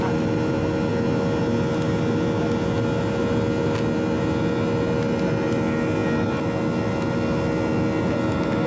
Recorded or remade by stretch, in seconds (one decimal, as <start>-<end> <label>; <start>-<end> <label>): 0.0-8.7 recorded